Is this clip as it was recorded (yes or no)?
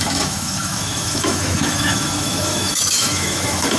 no